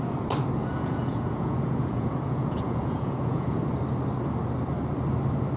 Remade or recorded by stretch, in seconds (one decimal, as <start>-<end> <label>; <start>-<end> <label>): 0.0-0.6 recorded; 0.6-3.6 remade; 3.6-5.6 recorded